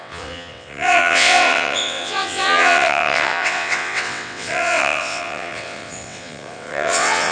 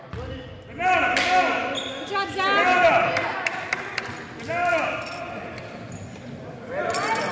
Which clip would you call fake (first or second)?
first